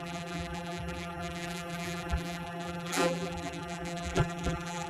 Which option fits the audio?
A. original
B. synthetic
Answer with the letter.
B